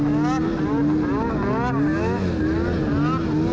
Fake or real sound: real